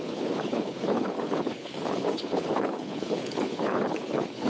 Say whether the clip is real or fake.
fake